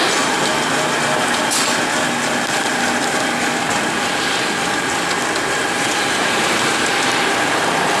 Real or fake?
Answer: real